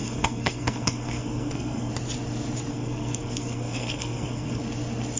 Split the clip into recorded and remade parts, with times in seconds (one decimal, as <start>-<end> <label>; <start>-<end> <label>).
0.0-1.9 remade; 1.9-2.7 recorded; 2.7-4.6 remade; 4.6-5.2 recorded